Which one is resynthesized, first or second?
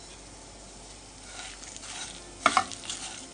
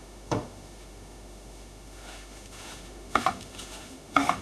second